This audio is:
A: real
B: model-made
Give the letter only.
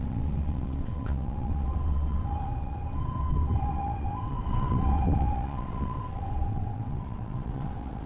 B